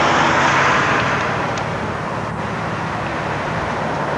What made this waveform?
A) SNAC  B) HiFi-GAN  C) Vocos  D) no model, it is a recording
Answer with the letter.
D